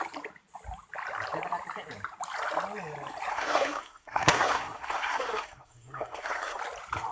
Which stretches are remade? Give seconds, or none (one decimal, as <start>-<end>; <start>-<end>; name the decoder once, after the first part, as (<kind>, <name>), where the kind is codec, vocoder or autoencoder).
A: 3.3-6.6 (codec, SNAC)